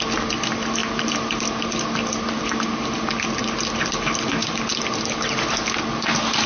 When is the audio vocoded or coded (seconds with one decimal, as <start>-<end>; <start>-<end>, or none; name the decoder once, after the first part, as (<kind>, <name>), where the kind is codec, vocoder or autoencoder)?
none